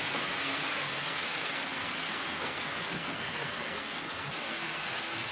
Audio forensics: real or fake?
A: fake